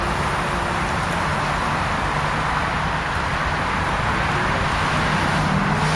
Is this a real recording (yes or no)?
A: yes